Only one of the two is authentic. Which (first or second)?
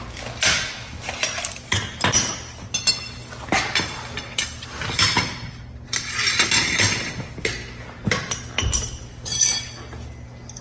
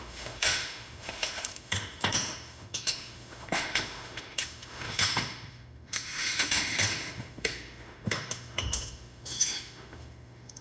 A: first